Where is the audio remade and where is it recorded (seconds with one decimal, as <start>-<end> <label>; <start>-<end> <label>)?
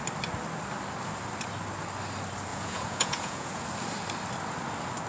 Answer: 0.0-2.5 recorded; 2.5-3.6 remade; 3.6-5.1 recorded